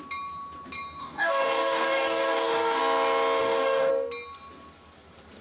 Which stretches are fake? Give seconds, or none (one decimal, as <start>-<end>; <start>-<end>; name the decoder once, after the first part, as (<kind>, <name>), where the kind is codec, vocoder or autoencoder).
1.0-2.8 (codec, DAC); 3.4-3.9